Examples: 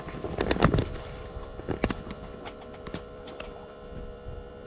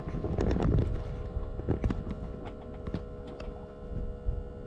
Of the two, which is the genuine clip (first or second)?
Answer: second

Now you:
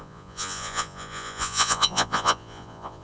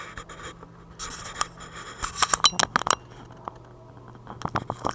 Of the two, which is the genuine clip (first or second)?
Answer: second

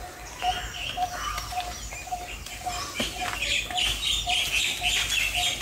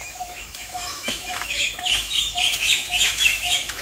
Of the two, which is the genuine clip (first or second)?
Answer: first